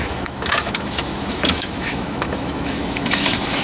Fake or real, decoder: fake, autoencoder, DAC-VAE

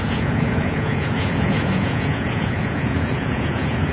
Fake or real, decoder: fake, vocoder, Vocos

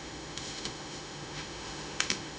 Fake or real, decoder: fake, autoencoder, DAC-VAE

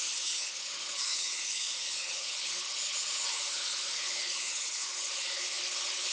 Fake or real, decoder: fake, codec, HILCodec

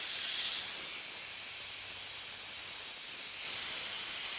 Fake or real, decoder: real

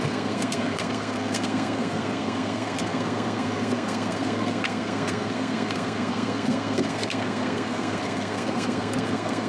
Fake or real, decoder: fake, codec, SNAC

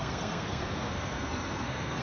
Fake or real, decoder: fake, codec, SNAC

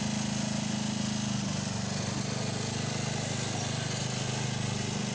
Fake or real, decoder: real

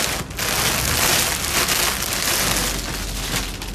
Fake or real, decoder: real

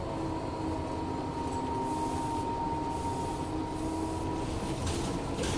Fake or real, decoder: real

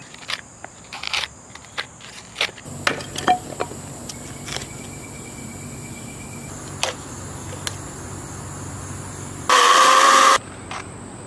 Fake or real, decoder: real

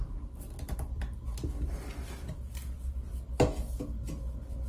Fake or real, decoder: real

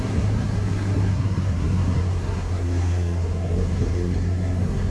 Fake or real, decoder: fake, codec, SNAC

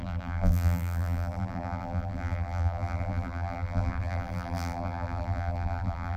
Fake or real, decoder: fake, vocoder, BigVGAN v2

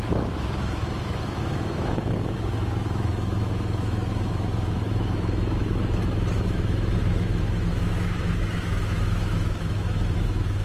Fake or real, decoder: fake, autoencoder, DAC-VAE